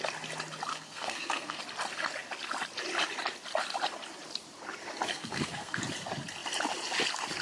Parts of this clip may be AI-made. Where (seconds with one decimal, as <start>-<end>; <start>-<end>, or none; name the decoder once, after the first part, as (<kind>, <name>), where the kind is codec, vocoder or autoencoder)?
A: 0.7-1.6 (codec, SNAC); 5.1-5.8